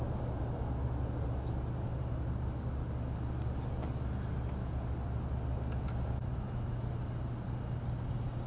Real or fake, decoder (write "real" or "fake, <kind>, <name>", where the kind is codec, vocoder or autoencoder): real